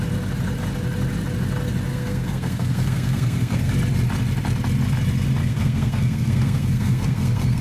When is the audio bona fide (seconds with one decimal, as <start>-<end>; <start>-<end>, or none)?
0.0-1.9; 3.7-5.4